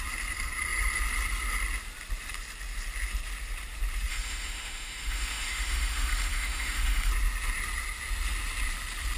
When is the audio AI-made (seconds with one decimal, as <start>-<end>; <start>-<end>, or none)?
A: 4.1-7.1